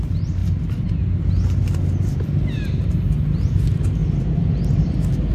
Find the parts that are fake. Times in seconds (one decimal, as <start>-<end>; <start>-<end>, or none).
none